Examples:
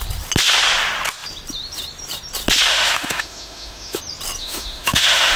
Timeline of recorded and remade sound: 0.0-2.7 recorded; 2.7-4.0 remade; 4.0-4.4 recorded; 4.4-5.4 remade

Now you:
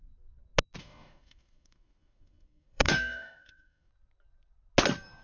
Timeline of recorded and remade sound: 0.0-0.8 recorded; 0.8-3.9 remade; 3.9-5.2 recorded